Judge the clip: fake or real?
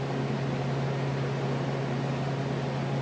real